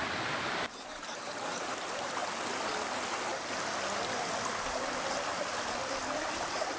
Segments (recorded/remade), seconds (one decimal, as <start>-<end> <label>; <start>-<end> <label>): 0.0-2.2 remade; 2.2-6.3 recorded; 6.3-6.8 remade